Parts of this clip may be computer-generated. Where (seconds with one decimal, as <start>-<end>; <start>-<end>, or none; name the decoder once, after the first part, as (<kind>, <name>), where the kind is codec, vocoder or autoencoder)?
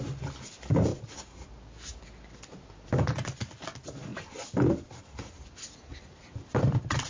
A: 0.9-1.4 (vocoder, BigVGAN v2); 4.1-5.0